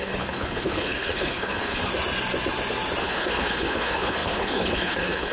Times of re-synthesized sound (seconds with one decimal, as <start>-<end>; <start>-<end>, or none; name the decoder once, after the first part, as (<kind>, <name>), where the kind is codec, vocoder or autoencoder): 0.0-1.9 (codec, HILCodec); 3.0-5.3